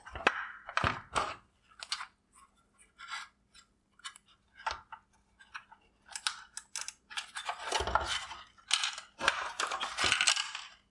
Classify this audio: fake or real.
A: real